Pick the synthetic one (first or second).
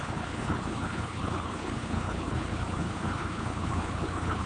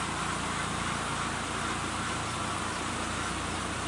first